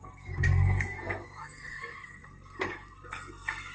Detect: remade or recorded remade